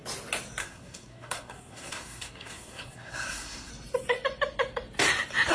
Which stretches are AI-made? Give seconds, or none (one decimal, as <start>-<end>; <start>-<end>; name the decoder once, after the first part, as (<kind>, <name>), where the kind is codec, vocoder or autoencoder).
0.6-3.7 (codec, SNAC)